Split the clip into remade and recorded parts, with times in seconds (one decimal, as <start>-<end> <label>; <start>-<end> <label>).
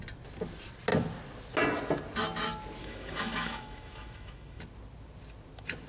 0.0-2.8 recorded; 2.8-4.6 remade; 4.6-5.9 recorded